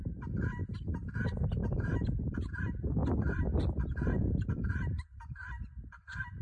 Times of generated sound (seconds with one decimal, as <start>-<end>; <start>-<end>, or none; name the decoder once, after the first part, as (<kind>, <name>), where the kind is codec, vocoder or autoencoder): 0.0-0.6 (vocoder, BigVGAN v2); 1.6-3.0; 3.9-6.4